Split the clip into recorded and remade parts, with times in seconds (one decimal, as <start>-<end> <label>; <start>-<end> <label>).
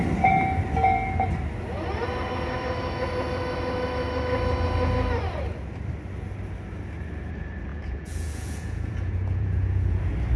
0.0-7.7 recorded; 7.7-10.0 remade; 10.0-10.4 recorded